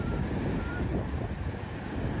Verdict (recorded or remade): recorded